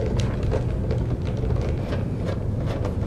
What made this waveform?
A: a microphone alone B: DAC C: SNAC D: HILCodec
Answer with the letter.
A